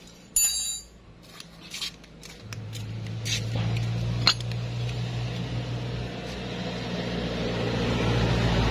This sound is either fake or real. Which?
real